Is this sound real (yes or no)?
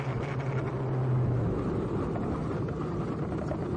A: yes